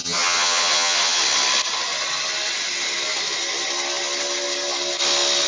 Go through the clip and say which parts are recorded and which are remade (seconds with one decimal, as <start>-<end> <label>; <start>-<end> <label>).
0.0-1.2 remade; 1.2-5.5 recorded